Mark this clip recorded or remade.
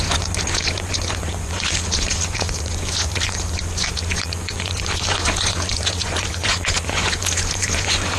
remade